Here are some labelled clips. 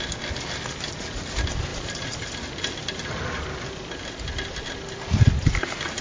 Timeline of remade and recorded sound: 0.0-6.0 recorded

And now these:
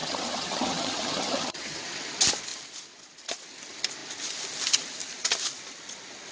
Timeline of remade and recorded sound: 0.0-1.8 remade; 1.8-6.3 recorded